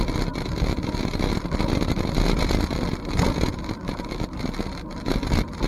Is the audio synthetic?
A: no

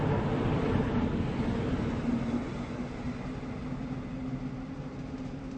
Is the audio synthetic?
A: no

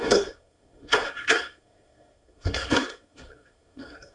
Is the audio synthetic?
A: yes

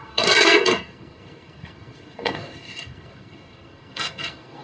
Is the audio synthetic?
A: yes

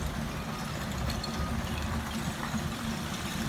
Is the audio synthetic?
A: no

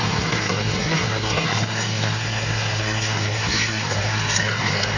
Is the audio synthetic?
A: yes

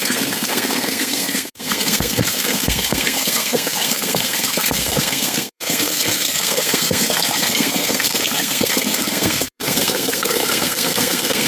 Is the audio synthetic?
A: yes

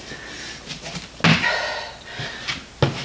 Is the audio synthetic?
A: no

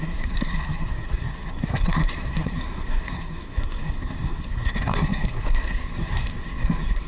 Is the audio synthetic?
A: yes